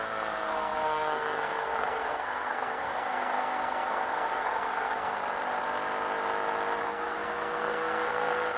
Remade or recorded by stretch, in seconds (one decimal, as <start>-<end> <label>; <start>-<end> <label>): 0.0-5.2 remade; 5.2-6.8 recorded; 6.8-8.6 remade